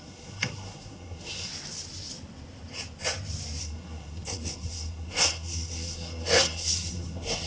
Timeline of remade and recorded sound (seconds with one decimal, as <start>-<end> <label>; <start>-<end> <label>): 0.0-1.5 remade; 1.5-3.6 recorded; 3.6-7.5 remade